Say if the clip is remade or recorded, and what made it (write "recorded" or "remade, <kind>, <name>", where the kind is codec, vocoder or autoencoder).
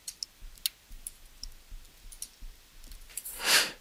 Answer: recorded